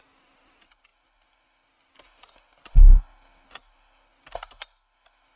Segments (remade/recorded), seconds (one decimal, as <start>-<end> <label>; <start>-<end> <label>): 0.0-5.4 recorded